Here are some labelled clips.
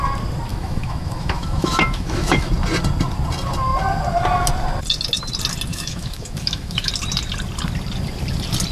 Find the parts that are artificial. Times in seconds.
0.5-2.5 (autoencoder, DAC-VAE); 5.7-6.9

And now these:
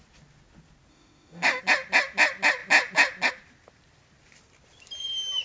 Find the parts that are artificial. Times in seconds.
0.9-1.6 (autoencoder, DAC-VAE)

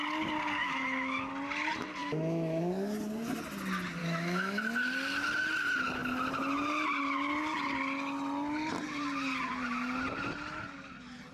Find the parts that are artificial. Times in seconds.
0.6-1.3 (autoencoder, DAC-VAE); 2.0-2.6; 4.0-4.6

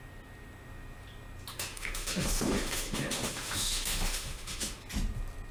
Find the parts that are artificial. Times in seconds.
1.5-4.8 (autoencoder, DAC-VAE)

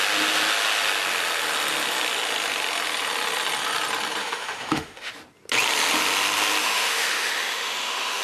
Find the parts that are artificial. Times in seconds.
4.2-5.1 (autoencoder, DAC-VAE); 6.6-8.2

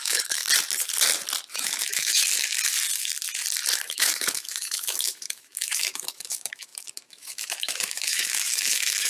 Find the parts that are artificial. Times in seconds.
0.0-0.4 (autoencoder, DAC-VAE); 1.5-2.2; 3.9-9.1